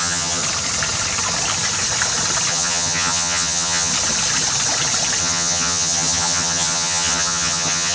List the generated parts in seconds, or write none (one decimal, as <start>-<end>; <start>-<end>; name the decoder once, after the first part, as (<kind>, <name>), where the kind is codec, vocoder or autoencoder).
0.0-0.4 (vocoder, HiFi-GAN); 2.5-3.9; 5.2-7.9